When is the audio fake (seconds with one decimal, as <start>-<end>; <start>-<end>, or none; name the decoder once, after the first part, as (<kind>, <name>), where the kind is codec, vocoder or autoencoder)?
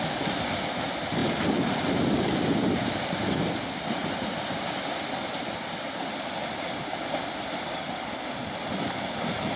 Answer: none